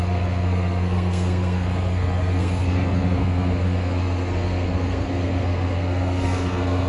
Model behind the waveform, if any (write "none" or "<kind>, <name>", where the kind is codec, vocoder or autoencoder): codec, SNAC